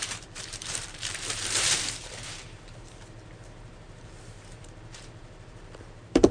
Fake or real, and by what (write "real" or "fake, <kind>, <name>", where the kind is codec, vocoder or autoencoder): fake, vocoder, BigVGAN v2